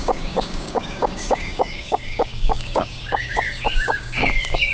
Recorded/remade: remade